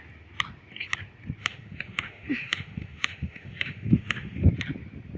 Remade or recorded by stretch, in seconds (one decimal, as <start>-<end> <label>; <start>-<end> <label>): 0.0-1.4 recorded; 1.4-4.5 remade; 4.5-5.2 recorded